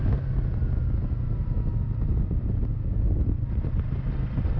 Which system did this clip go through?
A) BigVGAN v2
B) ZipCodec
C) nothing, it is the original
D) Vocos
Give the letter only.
C